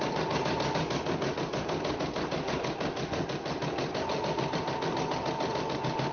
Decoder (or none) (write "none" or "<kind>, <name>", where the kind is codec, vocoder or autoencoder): none